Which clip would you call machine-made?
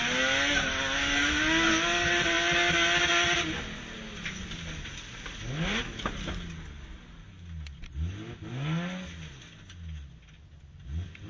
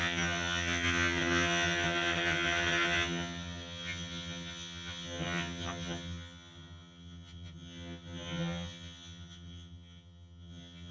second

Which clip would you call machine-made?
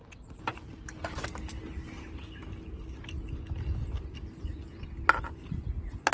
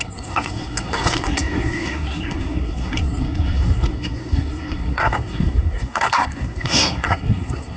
second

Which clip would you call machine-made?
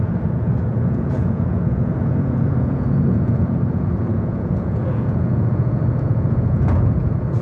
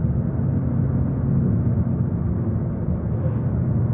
first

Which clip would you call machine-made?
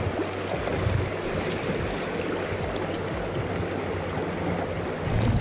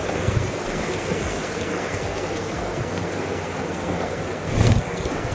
second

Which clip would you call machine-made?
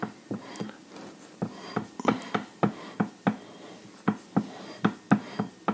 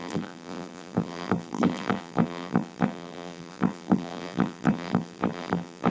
second